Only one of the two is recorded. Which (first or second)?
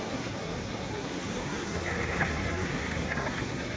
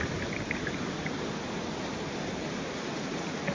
second